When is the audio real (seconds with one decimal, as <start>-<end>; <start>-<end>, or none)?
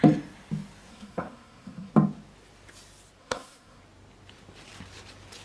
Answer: 0.0-0.9; 1.9-3.2; 3.8-5.4